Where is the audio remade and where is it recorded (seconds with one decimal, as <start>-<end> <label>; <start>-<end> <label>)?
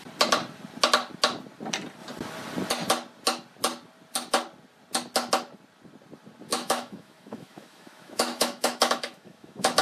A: 0.0-6.5 recorded; 6.5-9.8 remade